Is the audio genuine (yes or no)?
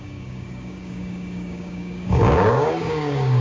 no